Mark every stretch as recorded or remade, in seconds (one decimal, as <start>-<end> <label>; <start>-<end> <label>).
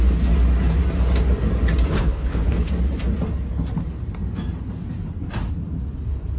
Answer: 0.0-2.0 recorded; 2.0-2.7 remade; 2.7-6.4 recorded